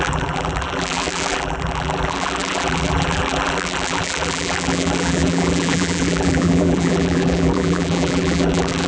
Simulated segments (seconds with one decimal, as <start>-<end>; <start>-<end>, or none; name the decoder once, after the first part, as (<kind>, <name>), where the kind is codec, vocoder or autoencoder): 0.0-8.9 (vocoder, BigVGAN v2)